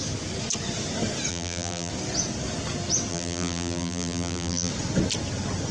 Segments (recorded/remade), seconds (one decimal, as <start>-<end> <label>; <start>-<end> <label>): 0.0-1.3 recorded; 1.3-1.9 remade; 1.9-3.1 recorded; 3.1-4.7 remade; 4.7-5.7 recorded

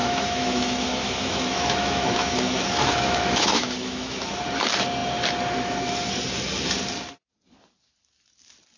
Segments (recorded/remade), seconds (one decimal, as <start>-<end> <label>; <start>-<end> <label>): 0.0-4.4 remade; 4.4-8.8 recorded

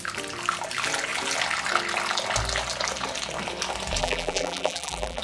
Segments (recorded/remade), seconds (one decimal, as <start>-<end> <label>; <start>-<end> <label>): 0.0-4.0 recorded; 4.0-5.2 remade

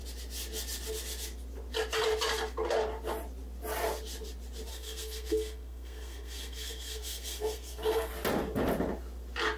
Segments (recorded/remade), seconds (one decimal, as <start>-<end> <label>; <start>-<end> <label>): 0.0-4.7 recorded; 4.7-8.1 remade; 8.1-9.6 recorded

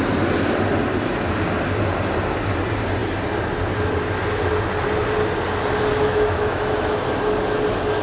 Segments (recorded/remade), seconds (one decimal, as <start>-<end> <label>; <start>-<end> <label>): 0.0-5.9 recorded; 5.9-6.7 remade; 6.7-8.0 recorded

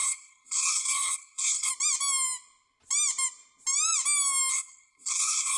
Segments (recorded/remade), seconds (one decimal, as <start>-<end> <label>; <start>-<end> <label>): 0.0-1.7 remade; 1.7-4.5 recorded; 4.5-5.6 remade